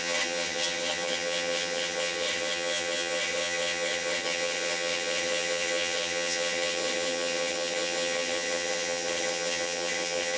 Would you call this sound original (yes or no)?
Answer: no